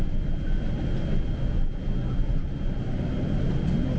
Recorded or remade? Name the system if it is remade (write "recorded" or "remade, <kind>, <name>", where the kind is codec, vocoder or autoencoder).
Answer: recorded